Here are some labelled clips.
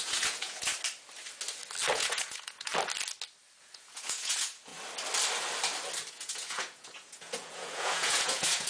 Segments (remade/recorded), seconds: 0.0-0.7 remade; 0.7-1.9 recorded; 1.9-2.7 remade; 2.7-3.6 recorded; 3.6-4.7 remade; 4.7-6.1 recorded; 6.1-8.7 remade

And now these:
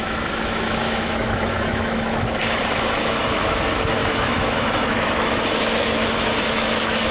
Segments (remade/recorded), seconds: 0.0-7.1 remade